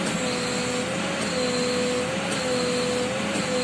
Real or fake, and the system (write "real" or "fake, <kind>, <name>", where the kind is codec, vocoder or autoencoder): real